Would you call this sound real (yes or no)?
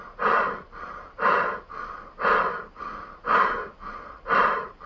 yes